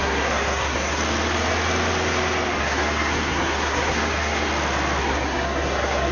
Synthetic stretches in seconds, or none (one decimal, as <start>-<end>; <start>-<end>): 0.0-1.0; 2.6-4.5; 5.0-6.1